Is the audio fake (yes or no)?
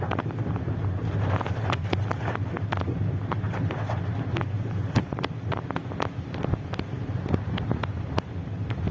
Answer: no